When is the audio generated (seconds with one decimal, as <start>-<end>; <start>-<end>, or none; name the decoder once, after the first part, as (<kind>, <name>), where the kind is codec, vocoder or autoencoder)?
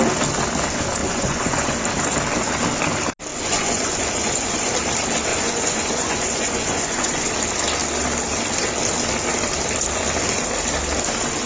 1.0-1.7 (vocoder, Vocos); 3.3-4.7; 5.3-7.3